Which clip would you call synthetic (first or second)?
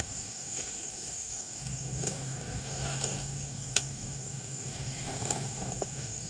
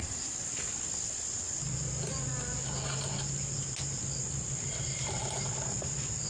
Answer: first